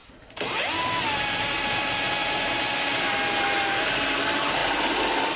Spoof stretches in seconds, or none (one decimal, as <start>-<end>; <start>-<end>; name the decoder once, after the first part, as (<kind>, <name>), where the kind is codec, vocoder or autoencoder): none